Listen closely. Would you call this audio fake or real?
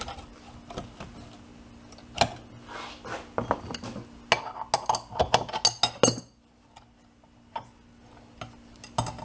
real